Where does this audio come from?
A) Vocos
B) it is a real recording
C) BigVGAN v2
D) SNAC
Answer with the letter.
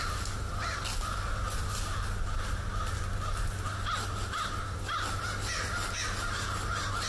B